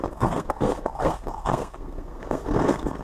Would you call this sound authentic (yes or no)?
no